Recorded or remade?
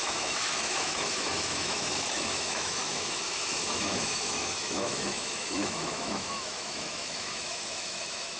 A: remade